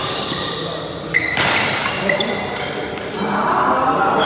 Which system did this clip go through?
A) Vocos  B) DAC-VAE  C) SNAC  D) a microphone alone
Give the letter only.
D